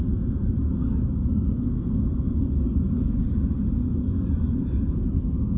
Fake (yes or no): no